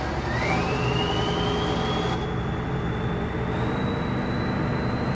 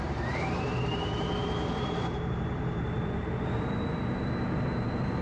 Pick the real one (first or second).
first